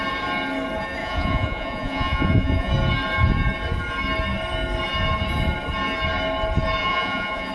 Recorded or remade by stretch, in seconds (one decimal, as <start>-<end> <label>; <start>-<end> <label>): 0.0-1.0 recorded; 1.0-2.7 remade; 2.7-6.8 recorded; 6.8-7.5 remade